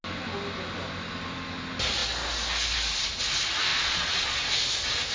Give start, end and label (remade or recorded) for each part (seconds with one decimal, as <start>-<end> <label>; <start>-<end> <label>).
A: 0.0-3.7 recorded; 3.7-4.4 remade; 4.4-5.1 recorded